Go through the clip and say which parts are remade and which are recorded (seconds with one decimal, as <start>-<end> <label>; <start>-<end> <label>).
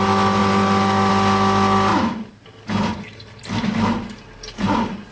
0.0-0.4 recorded; 0.4-1.1 remade; 1.1-1.9 recorded; 1.9-2.5 remade; 2.5-5.1 recorded